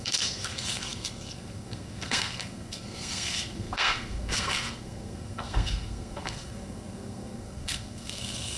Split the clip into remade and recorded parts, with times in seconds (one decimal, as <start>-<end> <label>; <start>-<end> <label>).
0.0-8.6 remade